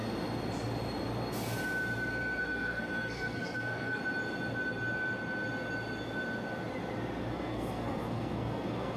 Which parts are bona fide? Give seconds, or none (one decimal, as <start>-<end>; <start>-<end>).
0.0-2.4; 4.0-7.3